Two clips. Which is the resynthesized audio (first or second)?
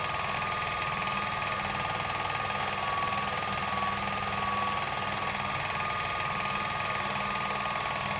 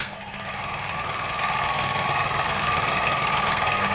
second